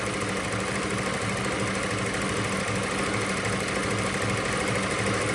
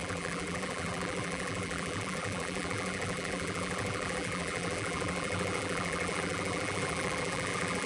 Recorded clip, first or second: first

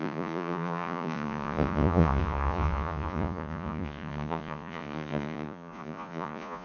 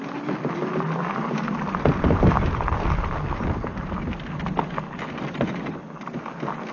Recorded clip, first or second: second